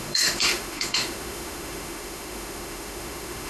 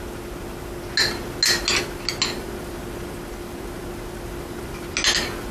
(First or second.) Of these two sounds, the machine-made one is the first